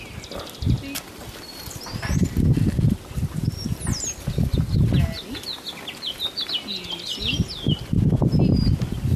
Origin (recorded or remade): recorded